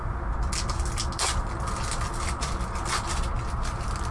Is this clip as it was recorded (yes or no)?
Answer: yes